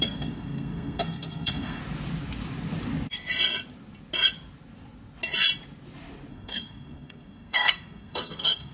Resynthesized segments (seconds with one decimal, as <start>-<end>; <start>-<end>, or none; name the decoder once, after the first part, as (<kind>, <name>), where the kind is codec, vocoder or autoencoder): 0.0-1.8 (codec, SNAC); 6.3-8.7